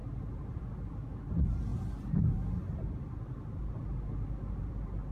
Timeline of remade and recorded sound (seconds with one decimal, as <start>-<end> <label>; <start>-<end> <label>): 0.0-0.6 remade; 0.6-5.1 recorded